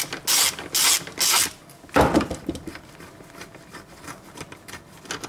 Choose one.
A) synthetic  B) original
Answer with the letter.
B